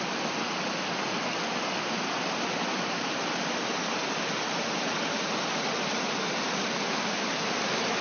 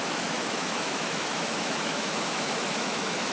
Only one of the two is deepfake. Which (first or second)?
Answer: second